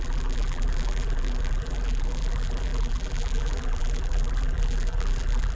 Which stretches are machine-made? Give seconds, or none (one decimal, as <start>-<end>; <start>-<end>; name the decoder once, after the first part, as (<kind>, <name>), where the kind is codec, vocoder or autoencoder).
0.0-5.6 (vocoder, BigVGAN v2)